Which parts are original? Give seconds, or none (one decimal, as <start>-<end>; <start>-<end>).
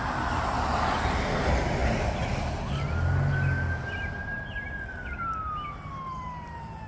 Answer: 0.0-6.9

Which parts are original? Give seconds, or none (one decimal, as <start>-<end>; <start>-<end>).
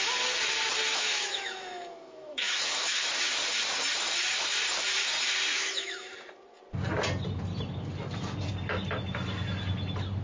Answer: 0.0-0.9; 3.2-5.5; 6.1-10.2